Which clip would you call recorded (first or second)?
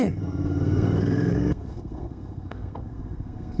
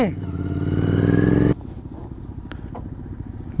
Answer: second